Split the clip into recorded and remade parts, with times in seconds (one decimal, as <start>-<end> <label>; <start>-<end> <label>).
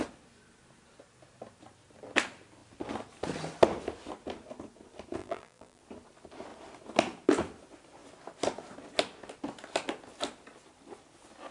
0.0-5.2 recorded; 5.2-5.8 remade; 5.8-11.5 recorded